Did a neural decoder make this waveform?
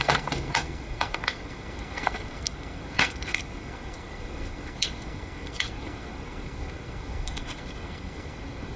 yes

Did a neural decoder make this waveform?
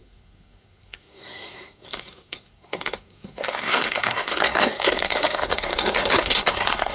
yes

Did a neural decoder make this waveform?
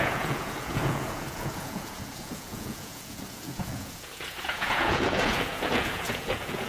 yes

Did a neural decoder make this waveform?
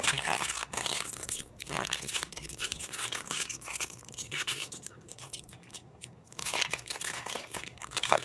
yes